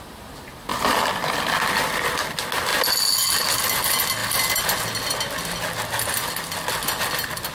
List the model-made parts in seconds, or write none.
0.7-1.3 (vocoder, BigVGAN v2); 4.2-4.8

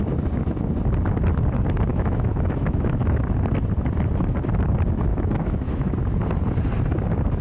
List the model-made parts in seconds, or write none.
1.9-3.2 (autoencoder, DAC-VAE); 5.1-5.9

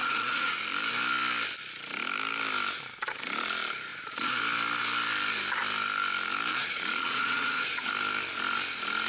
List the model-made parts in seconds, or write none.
0.0-0.6 (vocoder, Vocos); 3.9-4.4; 6.5-7.9

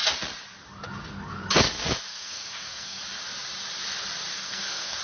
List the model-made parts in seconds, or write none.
2.1-3.0 (codec, SNAC); 4.3-5.0